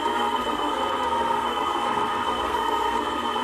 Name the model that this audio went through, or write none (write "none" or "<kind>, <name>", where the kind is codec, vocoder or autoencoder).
codec, SNAC